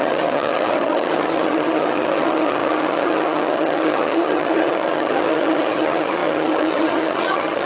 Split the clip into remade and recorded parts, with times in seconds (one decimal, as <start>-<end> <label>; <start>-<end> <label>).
0.0-7.7 remade